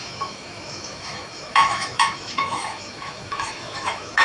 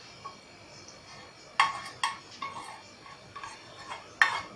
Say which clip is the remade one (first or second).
first